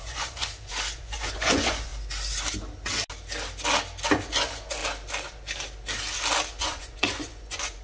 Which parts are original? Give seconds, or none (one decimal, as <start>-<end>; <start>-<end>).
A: 1.9-4.3; 4.8-6.6